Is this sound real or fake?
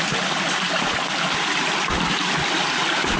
real